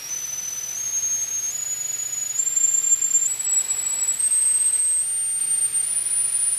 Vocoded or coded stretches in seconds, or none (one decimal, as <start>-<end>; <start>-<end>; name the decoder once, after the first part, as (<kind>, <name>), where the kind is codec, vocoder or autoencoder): 0.0-4.8 (vocoder, BigVGAN v2); 5.4-6.6